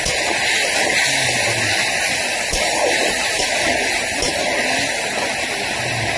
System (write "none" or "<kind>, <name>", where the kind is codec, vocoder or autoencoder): none